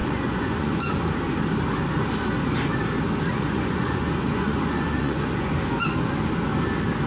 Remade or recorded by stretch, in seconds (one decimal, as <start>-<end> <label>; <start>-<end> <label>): 0.0-0.8 remade; 0.8-3.3 recorded; 3.3-5.5 remade; 5.5-7.1 recorded